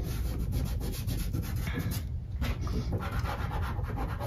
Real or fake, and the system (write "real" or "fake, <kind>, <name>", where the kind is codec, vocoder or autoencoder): real